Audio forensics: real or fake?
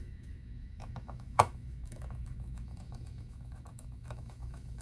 fake